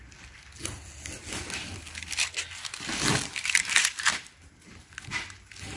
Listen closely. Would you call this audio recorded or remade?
recorded